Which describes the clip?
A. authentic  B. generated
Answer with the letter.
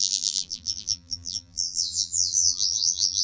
B